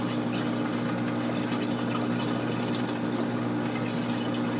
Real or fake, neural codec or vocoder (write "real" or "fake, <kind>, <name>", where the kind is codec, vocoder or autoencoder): real